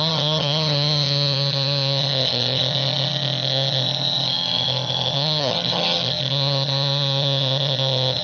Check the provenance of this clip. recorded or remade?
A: remade